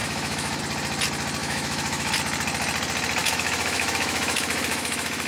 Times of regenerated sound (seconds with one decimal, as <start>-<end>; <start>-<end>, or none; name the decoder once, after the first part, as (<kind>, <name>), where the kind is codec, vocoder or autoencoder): 0.0-0.6 (autoencoder, DAC-VAE); 1.4-2.1; 3.2-5.3